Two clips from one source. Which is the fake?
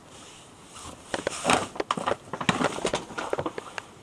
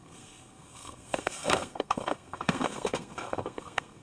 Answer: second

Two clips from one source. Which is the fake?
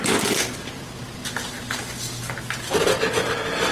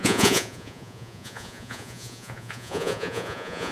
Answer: second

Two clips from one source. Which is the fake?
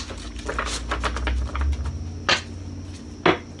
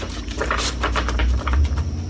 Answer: second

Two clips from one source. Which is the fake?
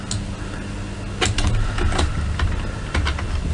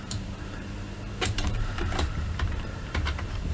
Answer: second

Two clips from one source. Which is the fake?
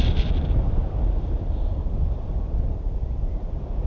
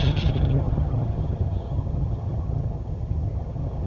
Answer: second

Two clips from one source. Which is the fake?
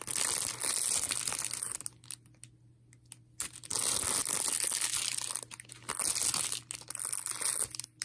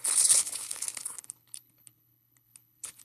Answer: second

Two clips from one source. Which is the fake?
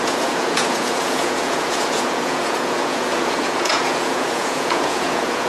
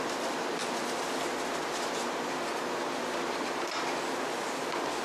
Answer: first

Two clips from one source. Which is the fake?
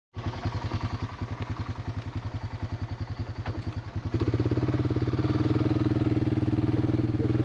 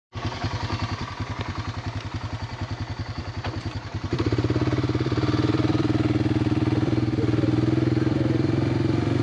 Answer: second